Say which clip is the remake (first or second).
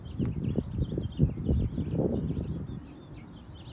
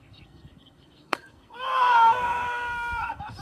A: second